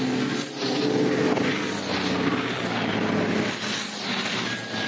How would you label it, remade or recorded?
recorded